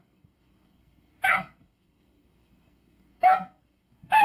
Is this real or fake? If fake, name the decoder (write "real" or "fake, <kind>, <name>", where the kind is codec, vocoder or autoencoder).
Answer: fake, codec, SNAC